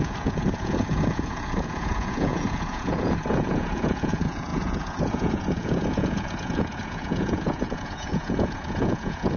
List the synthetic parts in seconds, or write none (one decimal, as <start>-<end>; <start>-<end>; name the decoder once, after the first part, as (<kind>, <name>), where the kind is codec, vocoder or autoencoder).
0.0-9.4 (vocoder, Vocos)